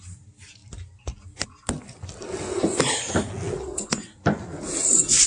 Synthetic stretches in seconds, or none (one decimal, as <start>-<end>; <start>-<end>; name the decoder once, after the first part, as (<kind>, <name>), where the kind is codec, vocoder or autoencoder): none